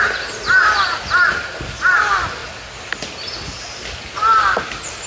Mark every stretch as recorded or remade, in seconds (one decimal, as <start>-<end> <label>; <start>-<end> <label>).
0.0-5.1 recorded